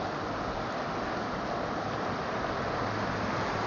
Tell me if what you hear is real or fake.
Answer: real